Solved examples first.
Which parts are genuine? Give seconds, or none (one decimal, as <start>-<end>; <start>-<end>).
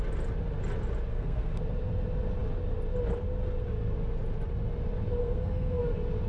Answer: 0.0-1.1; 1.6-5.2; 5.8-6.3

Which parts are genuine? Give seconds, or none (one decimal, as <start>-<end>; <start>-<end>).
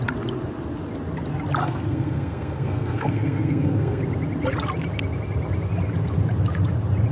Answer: 0.0-1.6; 4.0-7.1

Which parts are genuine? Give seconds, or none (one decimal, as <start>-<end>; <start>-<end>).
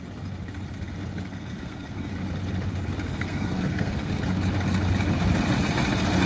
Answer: 0.0-1.3; 2.1-3.1; 4.1-6.3